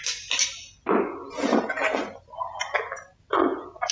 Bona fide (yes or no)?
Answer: yes